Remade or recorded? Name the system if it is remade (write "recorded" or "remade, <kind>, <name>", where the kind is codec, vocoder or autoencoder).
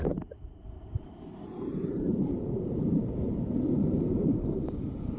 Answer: remade, vocoder, BigVGAN v2